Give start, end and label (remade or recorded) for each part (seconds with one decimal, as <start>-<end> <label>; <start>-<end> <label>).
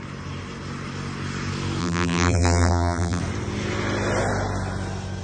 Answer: 0.0-1.8 recorded; 1.8-3.2 remade; 3.2-5.2 recorded